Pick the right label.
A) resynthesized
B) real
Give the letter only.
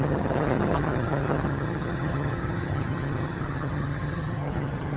A